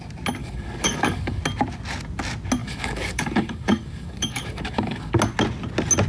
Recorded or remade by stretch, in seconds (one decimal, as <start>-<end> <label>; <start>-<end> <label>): 0.0-0.4 recorded; 0.4-1.4 remade; 1.4-2.6 recorded; 2.6-5.1 remade; 5.1-6.1 recorded